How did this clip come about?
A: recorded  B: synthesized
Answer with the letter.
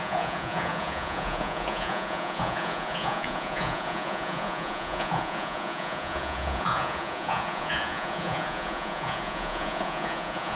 B